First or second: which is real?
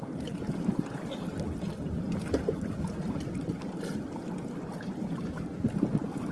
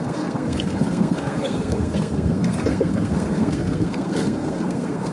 first